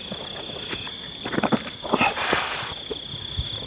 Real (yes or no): yes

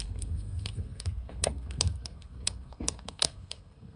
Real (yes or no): no